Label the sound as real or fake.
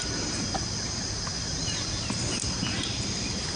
real